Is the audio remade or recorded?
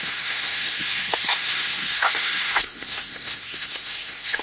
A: remade